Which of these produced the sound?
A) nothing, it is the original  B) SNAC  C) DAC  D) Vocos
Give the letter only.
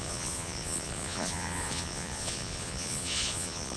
D